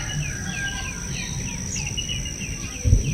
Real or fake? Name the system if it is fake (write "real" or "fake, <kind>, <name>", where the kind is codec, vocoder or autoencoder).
real